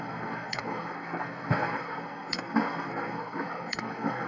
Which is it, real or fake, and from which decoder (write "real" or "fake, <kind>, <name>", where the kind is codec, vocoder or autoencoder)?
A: fake, codec, SNAC